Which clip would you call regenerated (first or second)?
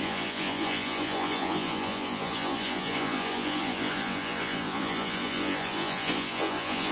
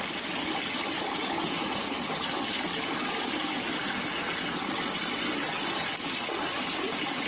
first